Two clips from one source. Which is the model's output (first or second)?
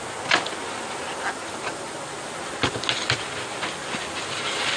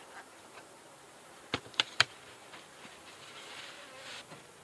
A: second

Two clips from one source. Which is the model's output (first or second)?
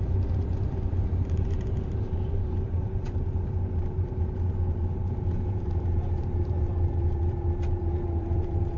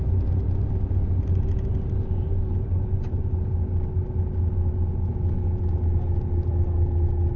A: first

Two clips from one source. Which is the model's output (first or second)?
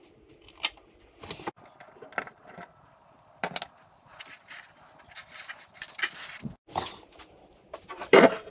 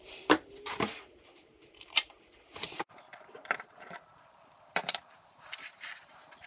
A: second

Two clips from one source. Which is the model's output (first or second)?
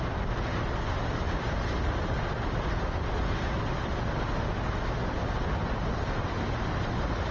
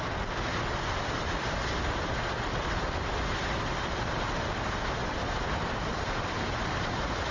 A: second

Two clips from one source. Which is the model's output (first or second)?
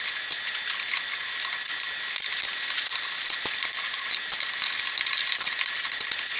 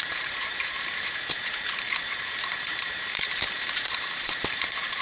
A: second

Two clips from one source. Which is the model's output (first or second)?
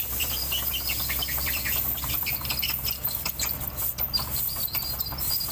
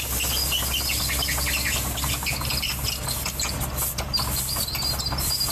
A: first